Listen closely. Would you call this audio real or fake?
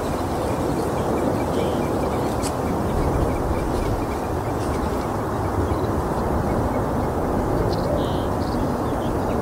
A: real